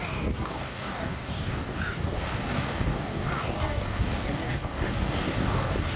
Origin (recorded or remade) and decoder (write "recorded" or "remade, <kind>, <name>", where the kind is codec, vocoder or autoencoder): remade, codec, DAC